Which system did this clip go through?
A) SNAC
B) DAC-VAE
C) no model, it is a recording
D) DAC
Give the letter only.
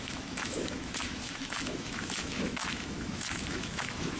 B